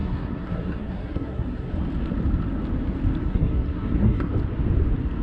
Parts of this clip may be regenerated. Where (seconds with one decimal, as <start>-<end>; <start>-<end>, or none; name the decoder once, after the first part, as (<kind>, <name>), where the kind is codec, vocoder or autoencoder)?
0.0-1.7 (codec, SNAC); 3.2-4.3